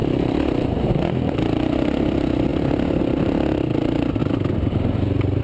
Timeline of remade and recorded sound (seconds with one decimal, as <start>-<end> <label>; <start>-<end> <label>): 0.0-0.9 remade; 0.9-5.4 recorded

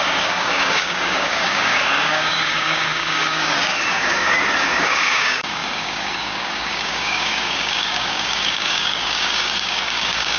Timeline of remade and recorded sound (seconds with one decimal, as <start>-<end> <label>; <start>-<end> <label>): 0.0-10.4 remade